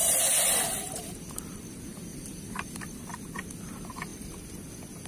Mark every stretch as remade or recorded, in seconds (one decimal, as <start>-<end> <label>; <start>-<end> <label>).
0.0-1.0 remade; 1.0-2.1 recorded; 2.1-3.0 remade; 3.0-5.1 recorded